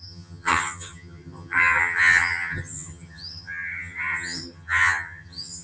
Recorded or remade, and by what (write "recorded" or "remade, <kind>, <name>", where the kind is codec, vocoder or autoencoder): remade, vocoder, HiFi-GAN